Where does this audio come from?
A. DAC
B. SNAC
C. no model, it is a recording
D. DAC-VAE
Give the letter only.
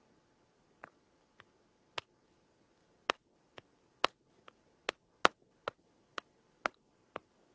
C